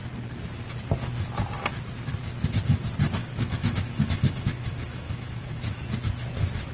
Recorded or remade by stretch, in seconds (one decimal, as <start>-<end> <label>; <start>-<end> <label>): 0.0-3.2 recorded; 3.2-5.8 remade; 5.8-6.7 recorded

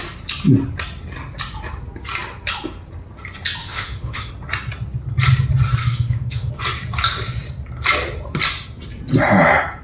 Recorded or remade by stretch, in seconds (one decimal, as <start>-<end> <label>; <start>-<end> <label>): 0.0-3.6 recorded; 3.6-4.3 remade; 4.3-5.8 recorded; 5.8-6.5 remade; 6.5-9.8 recorded

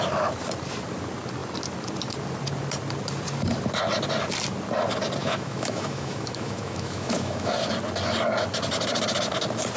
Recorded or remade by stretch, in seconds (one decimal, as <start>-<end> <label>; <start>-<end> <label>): 0.0-5.2 recorded; 5.2-7.5 remade; 7.5-9.8 recorded

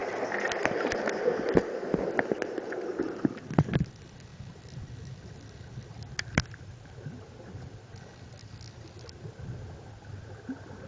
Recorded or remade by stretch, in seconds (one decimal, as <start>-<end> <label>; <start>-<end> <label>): 0.0-10.9 recorded